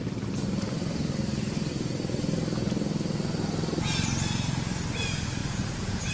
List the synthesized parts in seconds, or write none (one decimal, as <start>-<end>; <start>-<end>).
5.4-6.1